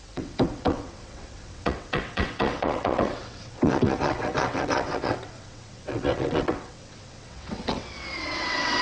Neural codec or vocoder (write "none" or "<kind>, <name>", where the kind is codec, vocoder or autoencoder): vocoder, WaveNeXt